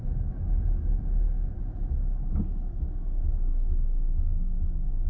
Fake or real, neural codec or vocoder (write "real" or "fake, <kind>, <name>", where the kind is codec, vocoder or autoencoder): real